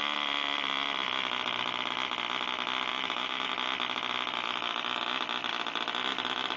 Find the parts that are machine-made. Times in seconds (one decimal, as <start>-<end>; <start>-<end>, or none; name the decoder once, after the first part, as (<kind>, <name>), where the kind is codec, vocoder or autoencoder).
2.9-3.5 (vocoder, BigVGAN v2)